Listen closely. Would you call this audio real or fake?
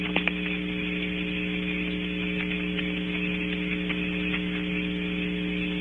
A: real